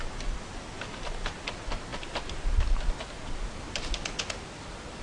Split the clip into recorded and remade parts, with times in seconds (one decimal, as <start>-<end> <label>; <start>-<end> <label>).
0.0-5.0 recorded